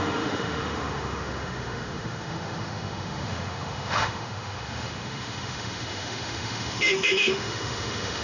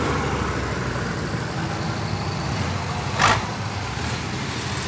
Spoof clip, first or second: first